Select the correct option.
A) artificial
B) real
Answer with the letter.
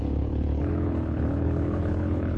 A